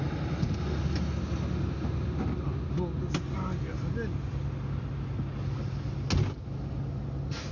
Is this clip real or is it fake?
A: real